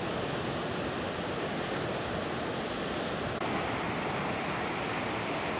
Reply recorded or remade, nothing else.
recorded